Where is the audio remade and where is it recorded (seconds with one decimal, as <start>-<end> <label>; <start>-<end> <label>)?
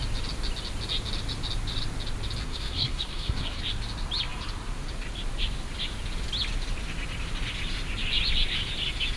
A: 0.0-2.4 recorded; 2.4-3.6 remade; 3.6-9.2 recorded